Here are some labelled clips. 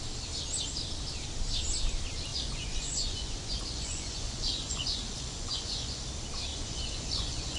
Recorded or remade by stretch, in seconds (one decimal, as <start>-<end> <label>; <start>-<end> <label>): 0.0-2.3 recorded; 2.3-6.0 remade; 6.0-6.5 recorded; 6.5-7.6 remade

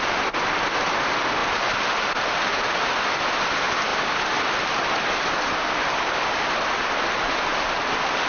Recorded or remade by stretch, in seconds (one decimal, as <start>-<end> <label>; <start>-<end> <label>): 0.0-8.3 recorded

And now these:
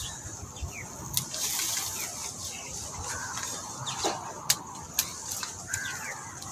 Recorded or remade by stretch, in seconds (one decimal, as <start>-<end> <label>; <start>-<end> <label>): 0.0-6.5 recorded